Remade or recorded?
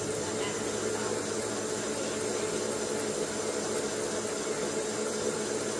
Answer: recorded